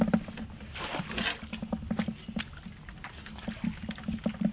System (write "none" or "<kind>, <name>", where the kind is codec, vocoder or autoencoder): none